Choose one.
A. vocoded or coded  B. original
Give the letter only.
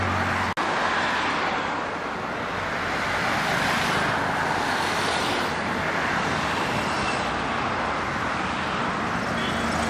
B